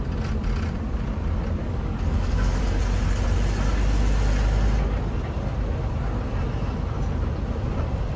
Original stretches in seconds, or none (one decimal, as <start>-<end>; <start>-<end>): 0.0-1.6; 2.6-8.2